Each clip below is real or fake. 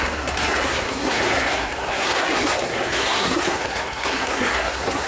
fake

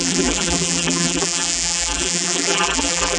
fake